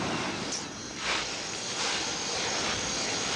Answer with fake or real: real